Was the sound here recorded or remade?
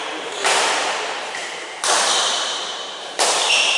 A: remade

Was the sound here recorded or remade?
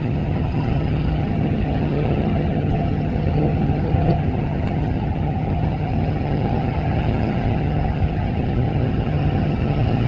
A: remade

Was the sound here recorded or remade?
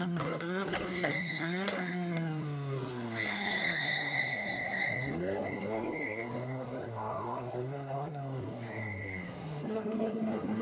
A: remade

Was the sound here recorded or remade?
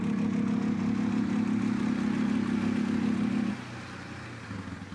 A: recorded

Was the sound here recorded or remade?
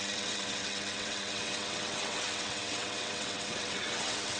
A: remade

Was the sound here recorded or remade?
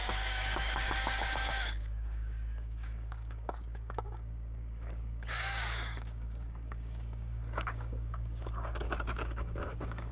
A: remade